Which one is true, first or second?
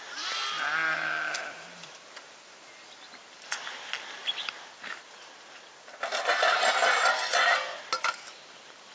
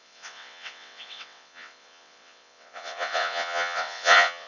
first